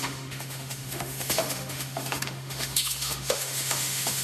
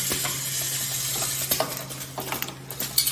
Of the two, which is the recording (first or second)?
second